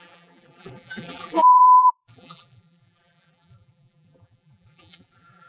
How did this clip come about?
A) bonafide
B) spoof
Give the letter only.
B